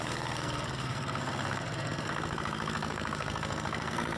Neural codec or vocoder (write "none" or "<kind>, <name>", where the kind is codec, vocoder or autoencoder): codec, SNAC